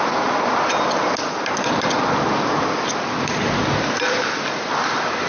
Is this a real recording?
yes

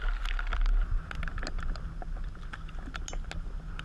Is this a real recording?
yes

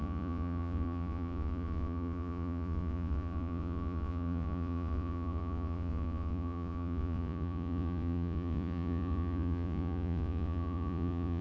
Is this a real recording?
no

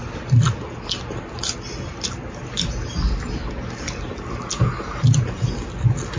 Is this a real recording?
yes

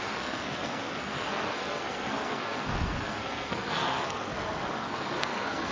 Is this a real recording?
no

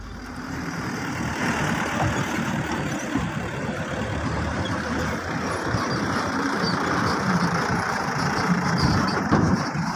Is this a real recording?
no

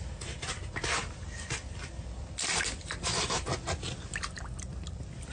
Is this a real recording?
yes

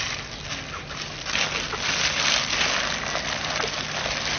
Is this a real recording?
yes